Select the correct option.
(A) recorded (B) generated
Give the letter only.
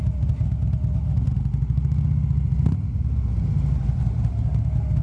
A